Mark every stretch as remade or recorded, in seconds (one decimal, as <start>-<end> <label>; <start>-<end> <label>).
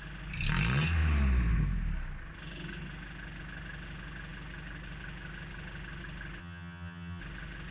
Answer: 0.0-6.4 recorded; 6.4-7.2 remade; 7.2-7.7 recorded